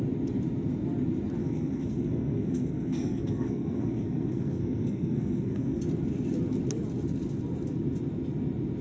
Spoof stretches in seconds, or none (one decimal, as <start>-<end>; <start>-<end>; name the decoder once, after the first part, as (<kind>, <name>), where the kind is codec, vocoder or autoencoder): 1.4-5.8 (codec, SNAC)